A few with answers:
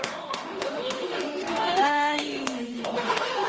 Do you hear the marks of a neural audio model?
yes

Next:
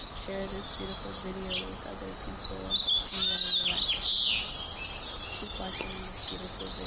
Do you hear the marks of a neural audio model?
no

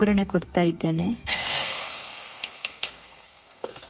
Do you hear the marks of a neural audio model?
yes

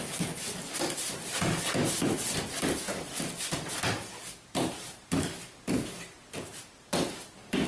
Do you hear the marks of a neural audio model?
no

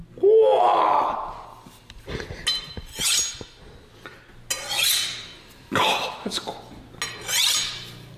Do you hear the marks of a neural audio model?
no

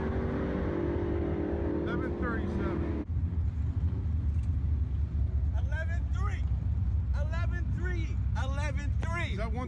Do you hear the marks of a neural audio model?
no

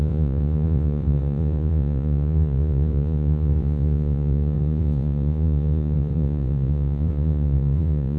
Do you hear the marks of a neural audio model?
yes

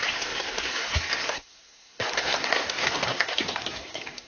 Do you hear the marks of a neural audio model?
yes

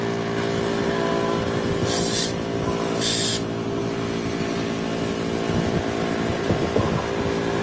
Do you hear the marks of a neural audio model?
no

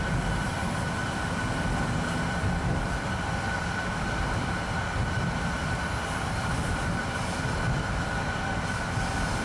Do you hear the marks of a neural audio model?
yes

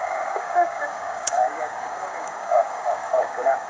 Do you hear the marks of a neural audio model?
yes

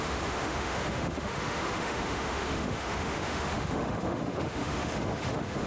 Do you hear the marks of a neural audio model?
yes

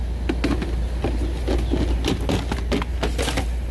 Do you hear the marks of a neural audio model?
no